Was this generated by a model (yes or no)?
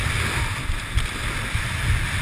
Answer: no